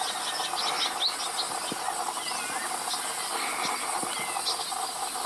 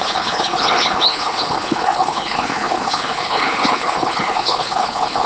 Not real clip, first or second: second